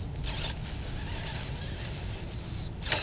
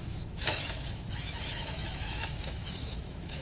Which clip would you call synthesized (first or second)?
second